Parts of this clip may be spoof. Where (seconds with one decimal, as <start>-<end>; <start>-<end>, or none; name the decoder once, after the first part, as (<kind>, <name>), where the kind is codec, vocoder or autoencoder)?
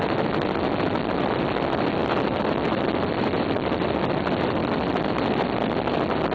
2.0-5.1 (vocoder, BigVGAN v2)